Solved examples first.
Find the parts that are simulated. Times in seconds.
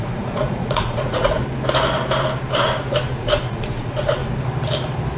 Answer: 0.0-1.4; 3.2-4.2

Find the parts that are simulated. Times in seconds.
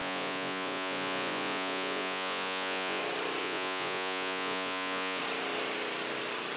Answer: 0.0-3.0; 3.4-5.2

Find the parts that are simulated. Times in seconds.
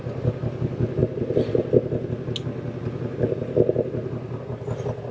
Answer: none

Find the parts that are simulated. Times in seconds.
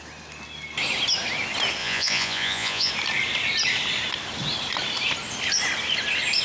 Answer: 1.8-2.9